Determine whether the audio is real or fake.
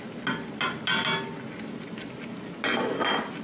real